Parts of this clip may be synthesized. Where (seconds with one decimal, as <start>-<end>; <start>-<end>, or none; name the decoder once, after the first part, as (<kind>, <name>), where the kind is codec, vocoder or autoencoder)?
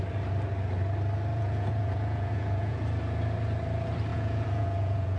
1.3-2.8 (vocoder, Vocos); 4.1-5.2